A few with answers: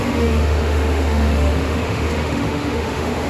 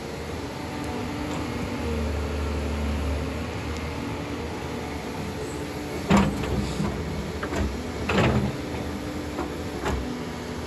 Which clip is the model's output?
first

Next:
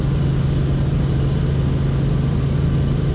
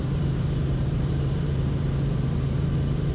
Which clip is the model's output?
second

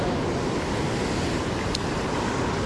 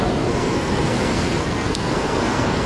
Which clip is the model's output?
second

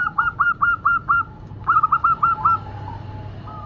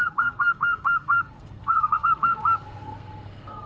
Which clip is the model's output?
second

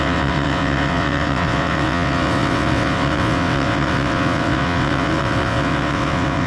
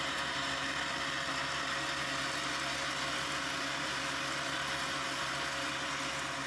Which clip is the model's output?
first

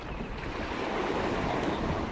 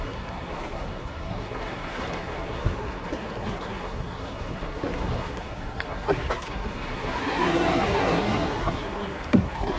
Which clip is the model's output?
second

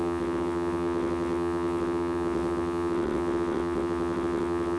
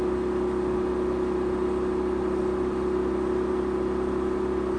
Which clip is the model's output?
first